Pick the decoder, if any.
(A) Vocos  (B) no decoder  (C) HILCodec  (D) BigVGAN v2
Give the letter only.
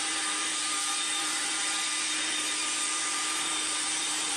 D